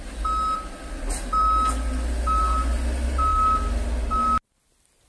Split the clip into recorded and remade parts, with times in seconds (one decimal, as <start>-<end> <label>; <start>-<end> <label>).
0.0-5.1 recorded